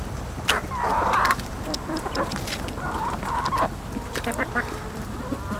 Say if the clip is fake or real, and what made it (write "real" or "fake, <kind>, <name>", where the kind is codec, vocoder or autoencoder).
fake, vocoder, BigVGAN v2